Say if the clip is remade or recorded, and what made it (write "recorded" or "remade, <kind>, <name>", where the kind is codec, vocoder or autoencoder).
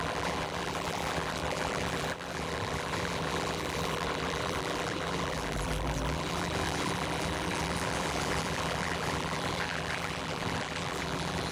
remade, vocoder, BigVGAN v2